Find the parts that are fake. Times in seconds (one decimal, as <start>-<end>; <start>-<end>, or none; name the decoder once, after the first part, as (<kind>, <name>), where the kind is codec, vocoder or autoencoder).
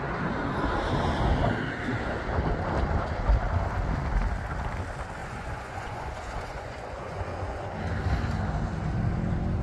5.2-7.7 (vocoder, Vocos)